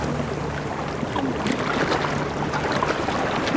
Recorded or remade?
recorded